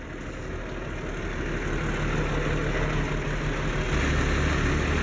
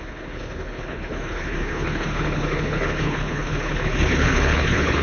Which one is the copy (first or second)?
second